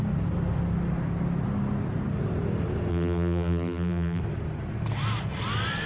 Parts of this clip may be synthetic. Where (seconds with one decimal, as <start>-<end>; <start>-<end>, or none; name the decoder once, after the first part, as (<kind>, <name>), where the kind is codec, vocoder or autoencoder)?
2.9-4.2 (vocoder, BigVGAN v2)